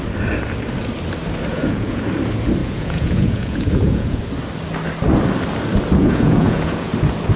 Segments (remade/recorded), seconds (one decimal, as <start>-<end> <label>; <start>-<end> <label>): 0.0-1.5 recorded; 1.5-2.0 remade; 2.0-2.6 recorded; 2.6-4.2 remade; 4.2-6.0 recorded; 6.0-6.9 remade; 6.9-7.4 recorded